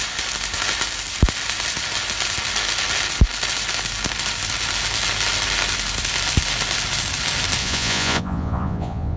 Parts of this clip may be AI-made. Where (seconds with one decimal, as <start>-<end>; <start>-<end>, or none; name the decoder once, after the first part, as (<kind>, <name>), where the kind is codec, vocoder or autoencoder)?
7.6-9.2 (vocoder, Vocos)